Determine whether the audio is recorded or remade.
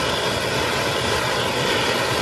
recorded